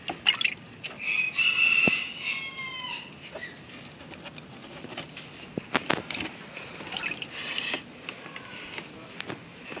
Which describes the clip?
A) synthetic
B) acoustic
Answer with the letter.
B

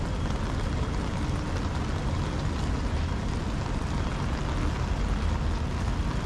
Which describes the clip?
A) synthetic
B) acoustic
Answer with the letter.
B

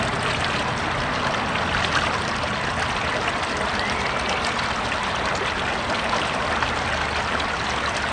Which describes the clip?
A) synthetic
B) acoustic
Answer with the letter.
B